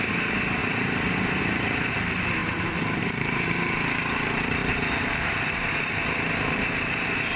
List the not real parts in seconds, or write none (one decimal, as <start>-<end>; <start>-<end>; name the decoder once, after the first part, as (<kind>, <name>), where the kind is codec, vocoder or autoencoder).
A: 0.0-0.6 (vocoder, BigVGAN v2); 1.4-4.6